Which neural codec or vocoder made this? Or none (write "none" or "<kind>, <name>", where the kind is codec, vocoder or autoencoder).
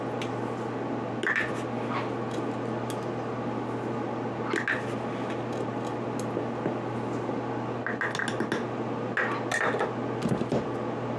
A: none